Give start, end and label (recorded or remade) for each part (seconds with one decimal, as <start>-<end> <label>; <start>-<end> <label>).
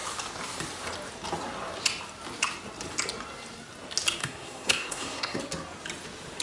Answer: 0.0-4.2 recorded; 4.2-5.4 remade; 5.4-6.4 recorded